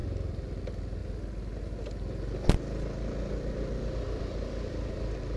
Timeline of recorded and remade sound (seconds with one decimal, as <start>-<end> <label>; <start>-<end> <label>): 0.0-5.4 recorded